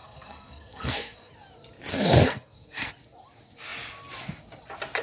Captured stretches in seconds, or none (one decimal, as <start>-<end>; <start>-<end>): 1.3-1.9; 2.9-5.0